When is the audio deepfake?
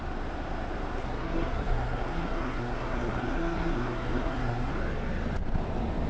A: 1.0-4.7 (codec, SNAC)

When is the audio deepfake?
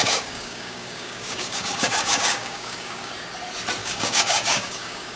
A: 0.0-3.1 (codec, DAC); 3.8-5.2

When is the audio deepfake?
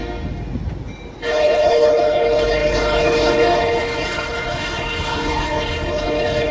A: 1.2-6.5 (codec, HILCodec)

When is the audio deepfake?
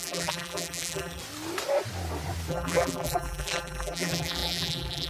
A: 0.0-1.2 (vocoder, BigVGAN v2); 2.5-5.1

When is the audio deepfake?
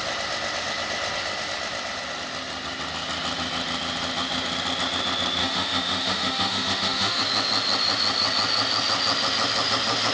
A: 5.4-7.2 (autoencoder, DAC-VAE)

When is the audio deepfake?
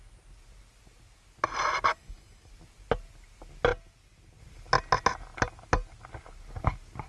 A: 1.9-2.5 (codec, DAC)